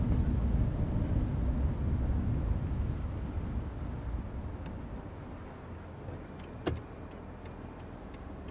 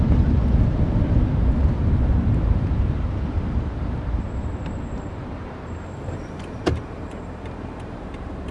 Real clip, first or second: first